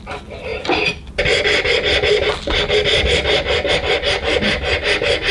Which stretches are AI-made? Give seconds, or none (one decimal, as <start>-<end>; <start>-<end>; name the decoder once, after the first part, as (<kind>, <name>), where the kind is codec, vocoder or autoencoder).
none